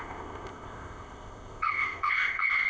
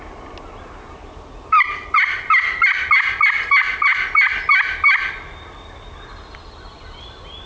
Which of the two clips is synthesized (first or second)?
first